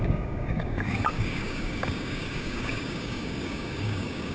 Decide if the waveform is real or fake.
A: fake